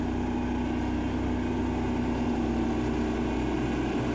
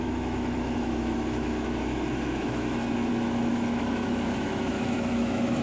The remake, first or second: second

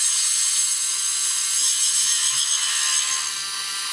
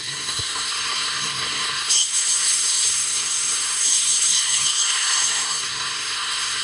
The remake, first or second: second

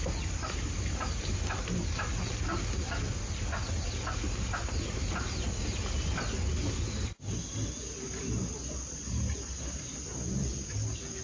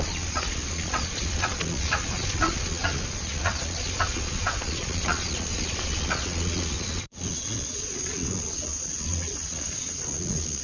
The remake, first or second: second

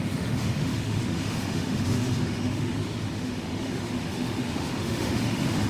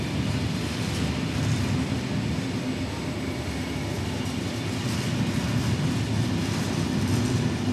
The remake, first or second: first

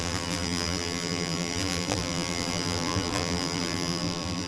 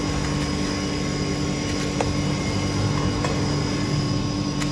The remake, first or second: first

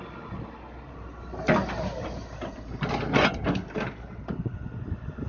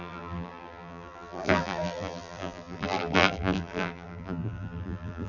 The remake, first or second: second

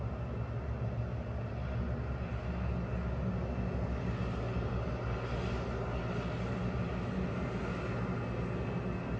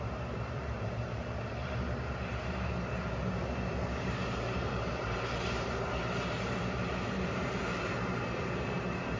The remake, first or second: second